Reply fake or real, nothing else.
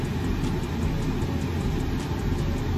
real